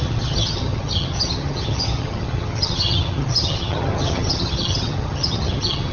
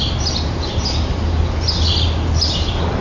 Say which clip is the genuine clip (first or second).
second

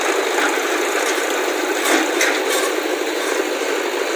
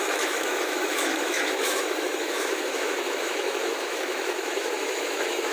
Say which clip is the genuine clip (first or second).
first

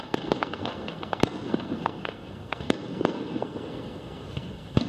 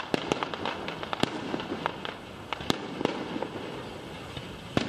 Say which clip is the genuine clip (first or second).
second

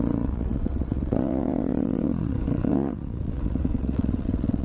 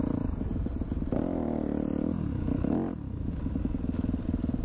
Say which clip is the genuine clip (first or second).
second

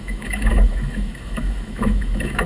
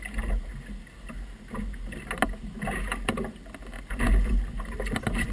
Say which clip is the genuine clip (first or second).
second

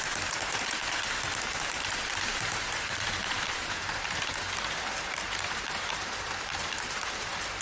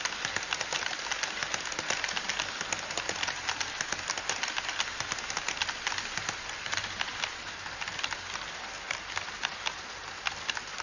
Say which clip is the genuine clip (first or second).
second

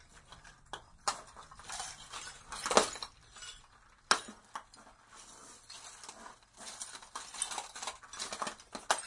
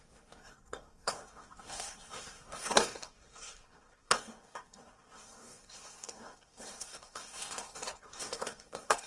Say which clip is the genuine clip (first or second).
first